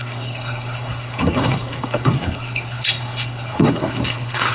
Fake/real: fake